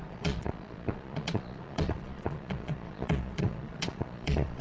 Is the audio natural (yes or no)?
no